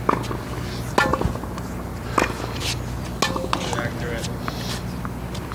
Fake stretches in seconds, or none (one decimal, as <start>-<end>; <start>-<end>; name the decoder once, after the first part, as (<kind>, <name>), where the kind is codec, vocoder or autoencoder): none